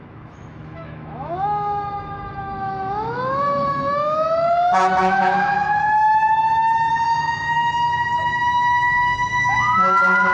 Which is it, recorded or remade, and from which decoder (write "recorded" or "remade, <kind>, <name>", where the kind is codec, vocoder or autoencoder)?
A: remade, autoencoder, DAC-VAE